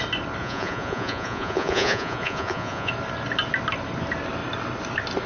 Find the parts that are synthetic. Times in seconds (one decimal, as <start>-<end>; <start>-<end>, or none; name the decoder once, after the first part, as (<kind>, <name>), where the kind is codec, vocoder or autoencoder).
0.4-2.9 (vocoder, Vocos)